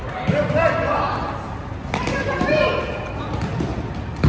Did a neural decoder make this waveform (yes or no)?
no